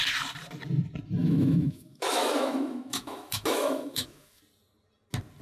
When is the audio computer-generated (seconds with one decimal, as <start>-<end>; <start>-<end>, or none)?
1.2-4.4